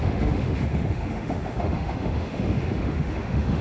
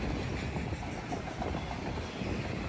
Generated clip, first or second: first